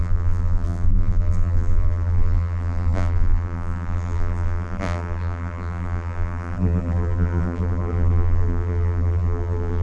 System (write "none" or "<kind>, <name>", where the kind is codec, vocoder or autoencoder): vocoder, BigVGAN v2